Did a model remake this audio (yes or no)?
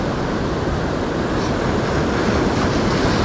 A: no